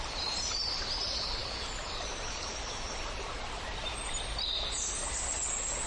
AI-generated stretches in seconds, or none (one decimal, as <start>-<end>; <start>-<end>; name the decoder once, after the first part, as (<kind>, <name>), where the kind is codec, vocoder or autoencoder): none